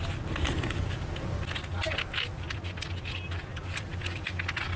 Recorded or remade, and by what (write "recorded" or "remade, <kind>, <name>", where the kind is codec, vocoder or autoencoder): recorded